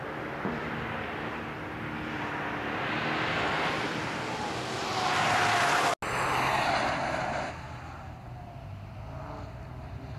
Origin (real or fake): real